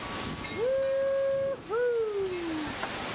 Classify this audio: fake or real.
real